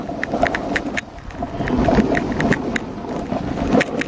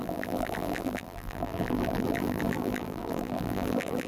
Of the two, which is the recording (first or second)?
first